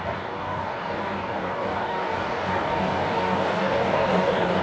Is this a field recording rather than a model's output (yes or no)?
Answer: no